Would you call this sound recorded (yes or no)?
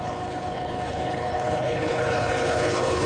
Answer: no